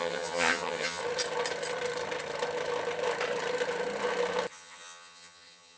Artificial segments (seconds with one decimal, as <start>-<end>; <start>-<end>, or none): 0.0-1.0; 4.5-5.8